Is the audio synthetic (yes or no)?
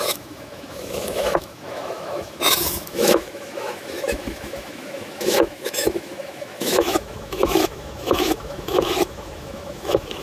yes